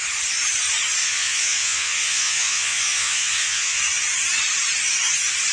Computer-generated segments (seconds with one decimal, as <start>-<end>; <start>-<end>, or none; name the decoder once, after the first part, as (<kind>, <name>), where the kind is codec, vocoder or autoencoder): 1.0-3.8 (vocoder, Vocos)